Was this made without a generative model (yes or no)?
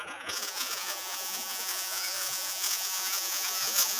no